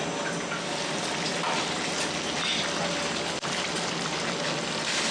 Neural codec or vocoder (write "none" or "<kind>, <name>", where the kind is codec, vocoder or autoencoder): none